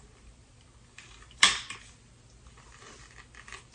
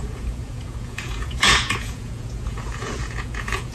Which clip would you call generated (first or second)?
second